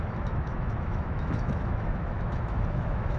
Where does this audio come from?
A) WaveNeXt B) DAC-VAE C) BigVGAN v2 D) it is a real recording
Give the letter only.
B